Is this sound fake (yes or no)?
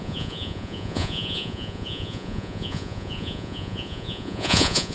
yes